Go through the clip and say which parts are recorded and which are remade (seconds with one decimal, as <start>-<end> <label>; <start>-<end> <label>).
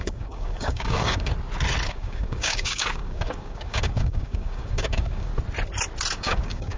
0.0-1.3 remade; 1.3-1.9 recorded; 1.9-5.3 remade; 5.3-6.1 recorded; 6.1-6.8 remade